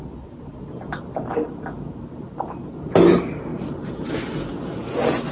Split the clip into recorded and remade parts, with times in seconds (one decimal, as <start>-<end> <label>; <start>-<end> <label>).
0.0-3.5 recorded; 3.5-4.1 remade; 4.1-5.3 recorded